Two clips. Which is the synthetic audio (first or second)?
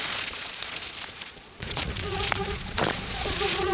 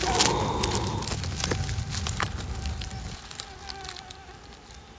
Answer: first